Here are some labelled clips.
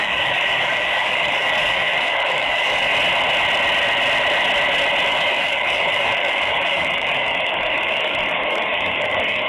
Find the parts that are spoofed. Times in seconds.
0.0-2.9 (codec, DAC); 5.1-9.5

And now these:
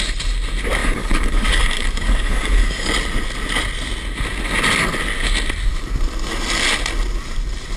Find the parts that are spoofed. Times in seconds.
0.8-2.9 (codec, DAC)

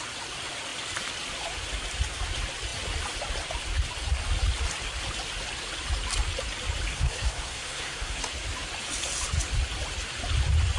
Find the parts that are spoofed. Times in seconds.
6.9-8.2 (codec, SNAC)

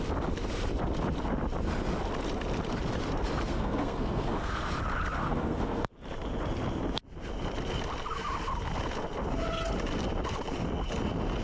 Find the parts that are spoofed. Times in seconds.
3.5-4.7 (codec, SNAC); 5.2-5.9

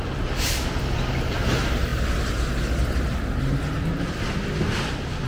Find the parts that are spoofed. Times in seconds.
none